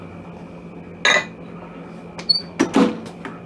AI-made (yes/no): no